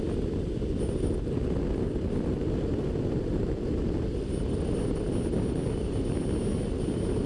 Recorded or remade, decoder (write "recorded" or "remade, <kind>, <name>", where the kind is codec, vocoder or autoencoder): recorded